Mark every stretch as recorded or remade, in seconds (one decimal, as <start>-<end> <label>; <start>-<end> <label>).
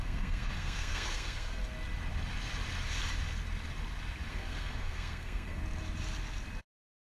0.0-1.6 remade; 1.6-4.3 recorded; 4.3-5.6 remade; 5.6-6.6 recorded; 6.6-7.0 remade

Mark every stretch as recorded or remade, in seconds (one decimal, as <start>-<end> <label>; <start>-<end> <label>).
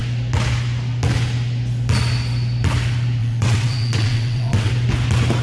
0.0-3.2 recorded; 3.2-4.7 remade; 4.7-5.4 recorded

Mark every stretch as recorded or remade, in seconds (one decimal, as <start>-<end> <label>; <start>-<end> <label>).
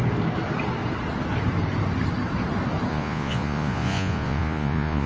0.0-2.9 recorded; 2.9-5.1 remade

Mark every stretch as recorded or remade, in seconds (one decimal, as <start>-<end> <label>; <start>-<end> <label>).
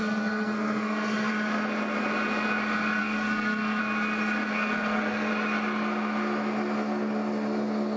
0.0-1.3 remade; 1.3-3.0 recorded; 3.0-3.8 remade; 3.8-4.5 recorded; 4.5-5.3 remade; 5.3-8.0 recorded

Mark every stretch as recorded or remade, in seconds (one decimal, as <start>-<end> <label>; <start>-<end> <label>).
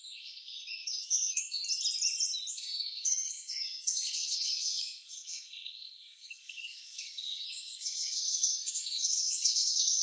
0.0-1.6 remade; 1.6-2.5 recorded; 2.5-10.0 remade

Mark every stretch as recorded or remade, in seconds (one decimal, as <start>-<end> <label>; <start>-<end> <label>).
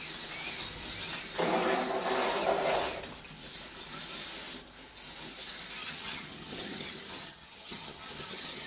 0.0-5.8 recorded; 5.8-8.7 remade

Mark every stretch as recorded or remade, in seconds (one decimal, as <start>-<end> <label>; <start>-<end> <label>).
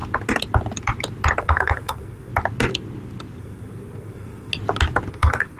0.0-1.4 recorded; 1.4-2.3 remade; 2.3-3.4 recorded; 3.4-4.5 remade; 4.5-5.1 recorded; 5.1-5.6 remade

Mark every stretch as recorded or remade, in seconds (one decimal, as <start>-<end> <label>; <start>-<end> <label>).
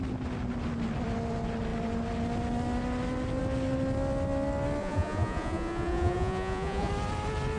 0.0-4.8 recorded; 4.8-6.9 remade; 6.9-7.6 recorded